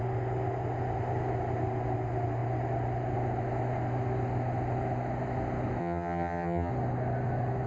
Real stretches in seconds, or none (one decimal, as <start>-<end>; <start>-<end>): 0.0-5.8; 6.7-7.7